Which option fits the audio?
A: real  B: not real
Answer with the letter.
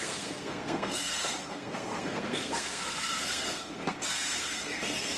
B